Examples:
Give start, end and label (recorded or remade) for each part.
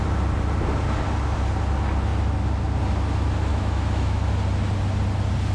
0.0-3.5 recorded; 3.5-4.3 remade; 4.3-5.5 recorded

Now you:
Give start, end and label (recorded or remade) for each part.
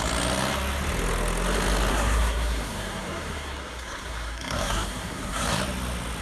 0.0-1.9 recorded; 1.9-5.6 remade; 5.6-6.2 recorded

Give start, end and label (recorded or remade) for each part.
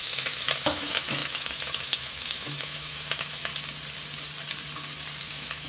0.0-3.5 remade; 3.5-5.2 recorded; 5.2-5.7 remade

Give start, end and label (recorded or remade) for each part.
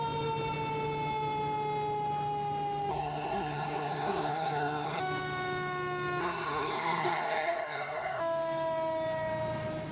0.0-2.9 recorded; 2.9-5.0 remade; 5.0-6.2 recorded; 6.2-8.2 remade; 8.2-9.9 recorded